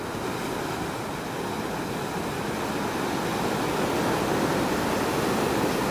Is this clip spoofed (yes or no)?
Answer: no